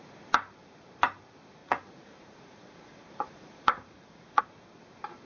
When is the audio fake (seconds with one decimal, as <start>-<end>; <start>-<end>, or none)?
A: 1.6-4.4